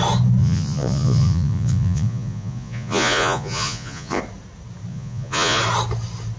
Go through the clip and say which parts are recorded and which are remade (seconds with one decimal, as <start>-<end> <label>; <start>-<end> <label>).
0.0-0.4 recorded; 0.4-4.2 remade; 4.2-4.9 recorded; 4.9-5.6 remade; 5.6-6.4 recorded